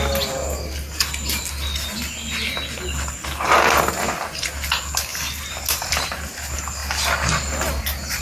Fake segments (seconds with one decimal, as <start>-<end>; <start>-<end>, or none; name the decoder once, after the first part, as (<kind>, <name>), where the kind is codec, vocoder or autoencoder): none